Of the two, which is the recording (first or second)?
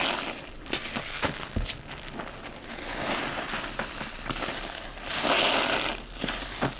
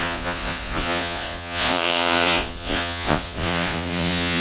first